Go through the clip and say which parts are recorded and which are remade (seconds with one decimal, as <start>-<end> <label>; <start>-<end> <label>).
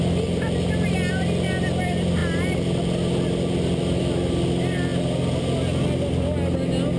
0.0-7.0 recorded